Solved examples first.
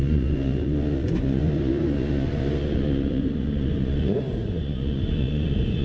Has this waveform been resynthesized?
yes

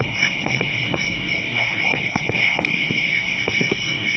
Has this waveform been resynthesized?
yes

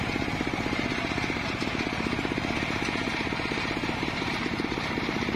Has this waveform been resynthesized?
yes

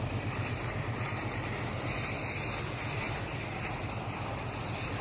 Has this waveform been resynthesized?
no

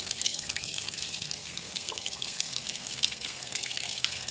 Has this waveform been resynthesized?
yes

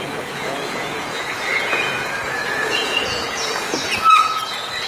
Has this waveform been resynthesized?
yes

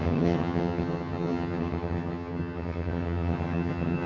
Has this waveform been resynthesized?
yes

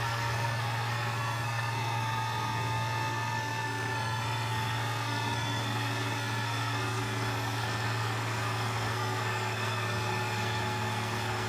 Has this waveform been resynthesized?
yes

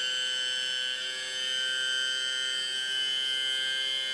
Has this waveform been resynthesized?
no